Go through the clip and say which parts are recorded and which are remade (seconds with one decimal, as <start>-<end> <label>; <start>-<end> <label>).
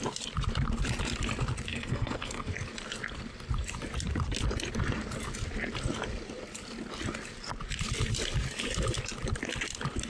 0.0-1.7 recorded; 1.7-2.5 remade; 2.5-10.1 recorded